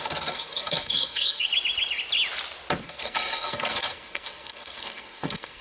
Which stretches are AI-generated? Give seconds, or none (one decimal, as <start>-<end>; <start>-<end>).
0.0-1.5; 2.8-5.6